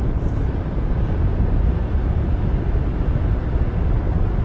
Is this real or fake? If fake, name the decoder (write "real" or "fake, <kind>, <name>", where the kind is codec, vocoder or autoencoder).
real